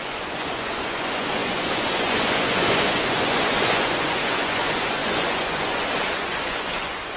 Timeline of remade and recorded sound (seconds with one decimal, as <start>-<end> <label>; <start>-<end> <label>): 0.0-7.2 remade